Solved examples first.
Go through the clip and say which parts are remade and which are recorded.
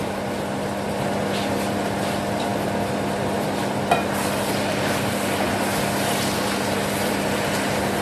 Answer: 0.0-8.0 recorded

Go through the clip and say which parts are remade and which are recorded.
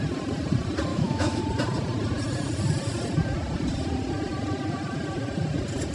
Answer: 0.0-0.9 recorded; 0.9-1.4 remade; 1.4-5.9 recorded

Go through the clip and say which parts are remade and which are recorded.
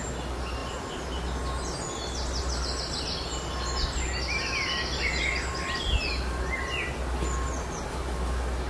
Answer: 0.0-8.7 recorded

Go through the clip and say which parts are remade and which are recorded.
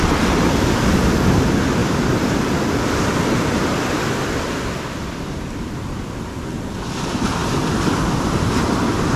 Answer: 0.0-1.8 recorded; 1.8-6.4 remade; 6.4-9.2 recorded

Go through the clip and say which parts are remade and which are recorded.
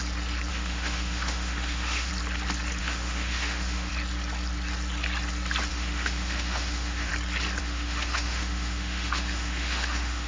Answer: 0.0-0.5 recorded; 0.5-2.1 remade; 2.1-2.8 recorded; 2.8-3.9 remade; 3.9-5.7 recorded; 5.7-7.1 remade; 7.1-7.6 recorded; 7.6-10.3 remade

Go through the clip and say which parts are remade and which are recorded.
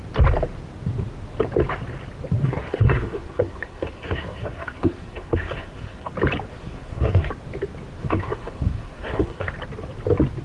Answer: 0.0-2.4 recorded; 2.4-6.1 remade; 6.1-6.5 recorded; 6.5-7.3 remade; 7.3-8.0 recorded; 8.0-9.5 remade; 9.5-10.4 recorded